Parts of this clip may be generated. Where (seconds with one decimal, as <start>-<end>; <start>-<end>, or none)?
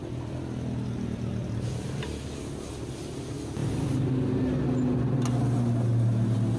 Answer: 3.6-4.1